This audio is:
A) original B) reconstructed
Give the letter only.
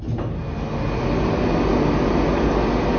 A